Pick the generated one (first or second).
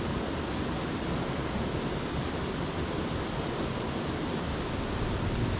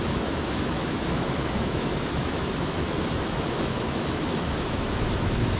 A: second